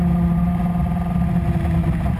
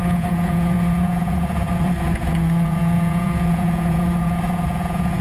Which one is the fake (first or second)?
second